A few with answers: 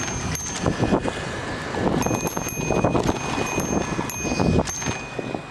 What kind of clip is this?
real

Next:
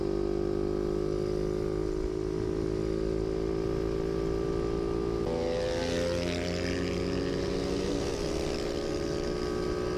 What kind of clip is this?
real